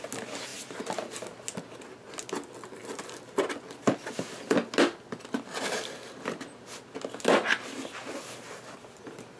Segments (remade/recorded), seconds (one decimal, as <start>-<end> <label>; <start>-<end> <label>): 0.0-9.4 recorded